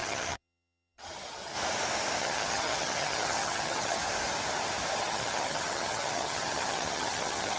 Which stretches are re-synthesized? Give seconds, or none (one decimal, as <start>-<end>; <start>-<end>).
0.0-1.5; 2.2-4.0; 5.0-7.6

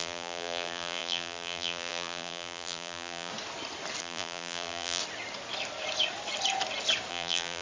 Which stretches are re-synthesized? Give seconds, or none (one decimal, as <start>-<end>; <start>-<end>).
0.0-3.3; 4.0-5.0; 7.1-7.6

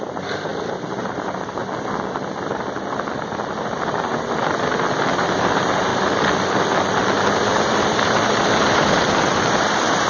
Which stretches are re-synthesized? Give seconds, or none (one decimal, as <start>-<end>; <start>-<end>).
0.0-0.5; 1.0-1.6; 5.1-5.9; 7.3-10.1

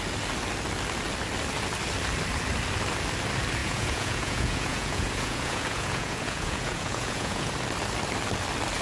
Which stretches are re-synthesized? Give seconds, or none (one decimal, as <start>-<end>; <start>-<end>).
3.6-7.5

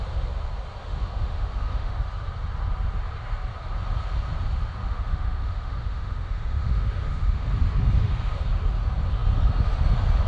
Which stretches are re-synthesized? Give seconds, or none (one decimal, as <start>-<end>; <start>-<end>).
0.8-2.0; 4.8-7.5